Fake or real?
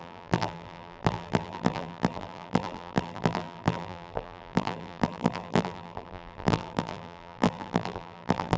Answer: fake